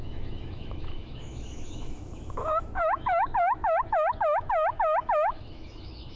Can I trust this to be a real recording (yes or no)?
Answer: no